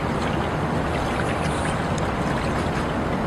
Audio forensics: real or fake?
real